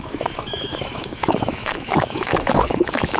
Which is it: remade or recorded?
remade